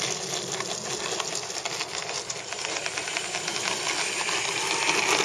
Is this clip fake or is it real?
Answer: real